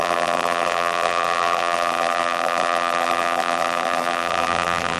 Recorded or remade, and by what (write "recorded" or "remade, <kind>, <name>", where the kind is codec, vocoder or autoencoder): remade, vocoder, BigVGAN v2